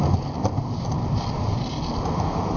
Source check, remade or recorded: recorded